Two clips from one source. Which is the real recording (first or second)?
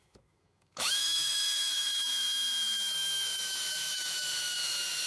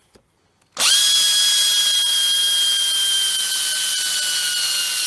second